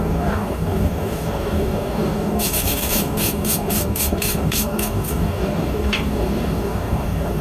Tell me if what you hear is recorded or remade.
remade